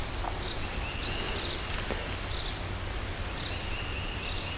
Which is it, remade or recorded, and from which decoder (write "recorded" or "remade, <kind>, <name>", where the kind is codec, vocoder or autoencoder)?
recorded